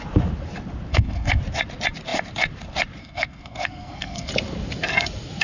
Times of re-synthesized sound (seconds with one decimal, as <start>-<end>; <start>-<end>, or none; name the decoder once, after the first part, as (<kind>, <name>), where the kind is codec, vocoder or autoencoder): 0.9-1.4 (codec, SNAC); 3.0-4.3